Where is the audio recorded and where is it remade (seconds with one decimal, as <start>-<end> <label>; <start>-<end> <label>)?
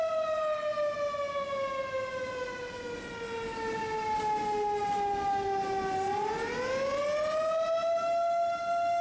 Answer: 0.0-9.0 recorded